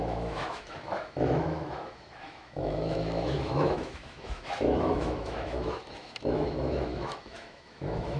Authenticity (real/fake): fake